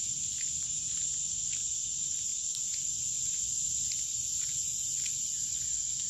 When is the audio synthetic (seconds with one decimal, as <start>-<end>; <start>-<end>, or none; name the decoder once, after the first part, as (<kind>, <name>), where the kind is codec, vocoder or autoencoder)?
none